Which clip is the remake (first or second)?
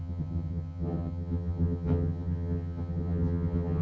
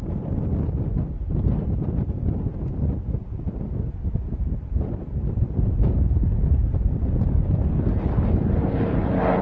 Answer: first